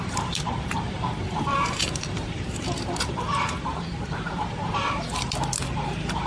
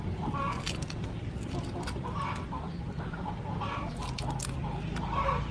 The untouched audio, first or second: second